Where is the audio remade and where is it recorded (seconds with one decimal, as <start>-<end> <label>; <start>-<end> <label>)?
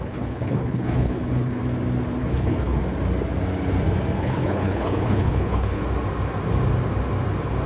0.0-1.6 remade; 1.6-2.2 recorded; 2.2-2.8 remade; 2.8-4.2 recorded; 4.2-5.8 remade; 5.8-7.7 recorded